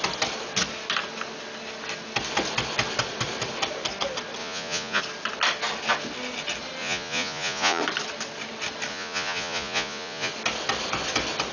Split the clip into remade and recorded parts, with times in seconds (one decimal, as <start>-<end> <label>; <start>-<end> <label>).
0.0-4.4 recorded; 4.4-5.0 remade; 5.0-6.8 recorded; 6.8-7.8 remade; 7.8-8.9 recorded; 8.9-10.3 remade; 10.3-11.5 recorded